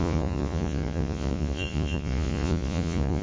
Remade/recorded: remade